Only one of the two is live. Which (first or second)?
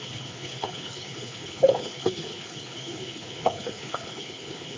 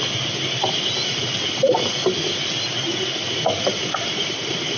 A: second